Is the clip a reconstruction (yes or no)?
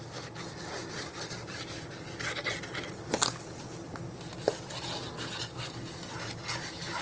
no